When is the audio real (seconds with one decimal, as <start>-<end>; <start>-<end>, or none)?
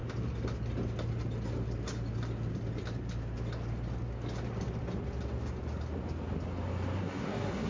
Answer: 0.0-7.0